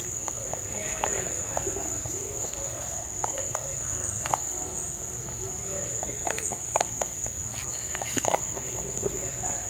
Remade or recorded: remade